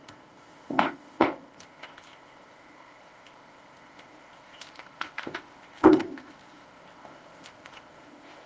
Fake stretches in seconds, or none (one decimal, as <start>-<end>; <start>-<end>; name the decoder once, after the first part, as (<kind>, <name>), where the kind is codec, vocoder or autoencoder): 0.0-8.5 (codec, ZipCodec)